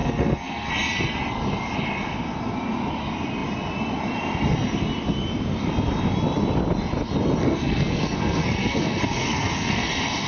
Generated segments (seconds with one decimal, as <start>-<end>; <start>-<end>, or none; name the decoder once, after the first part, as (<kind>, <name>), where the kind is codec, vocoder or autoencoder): 0.0-0.7 (codec, SNAC); 7.4-9.9